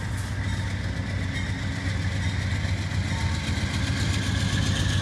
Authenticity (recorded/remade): recorded